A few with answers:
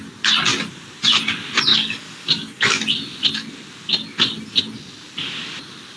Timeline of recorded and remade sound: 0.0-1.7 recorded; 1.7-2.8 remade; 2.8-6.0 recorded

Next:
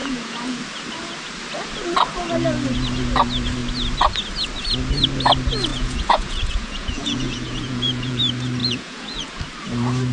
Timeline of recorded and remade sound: 0.0-0.6 remade; 0.6-5.7 recorded; 5.7-8.2 remade; 8.2-8.6 recorded; 8.6-9.4 remade; 9.4-10.1 recorded

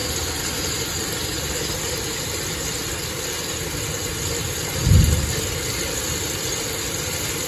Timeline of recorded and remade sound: 0.0-1.5 remade; 1.5-7.5 recorded